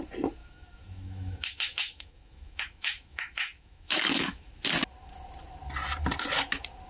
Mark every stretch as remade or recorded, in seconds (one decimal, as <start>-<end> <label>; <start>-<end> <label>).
0.0-0.4 recorded; 0.4-4.5 remade; 4.5-6.9 recorded